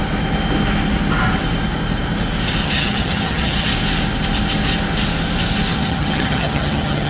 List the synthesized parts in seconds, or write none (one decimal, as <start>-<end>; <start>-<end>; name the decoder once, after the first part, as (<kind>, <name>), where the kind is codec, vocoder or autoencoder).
2.6-3.7 (vocoder, HiFi-GAN); 5.7-7.1